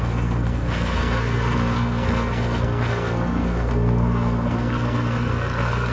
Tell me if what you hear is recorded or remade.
remade